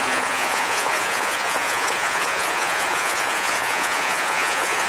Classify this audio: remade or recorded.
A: remade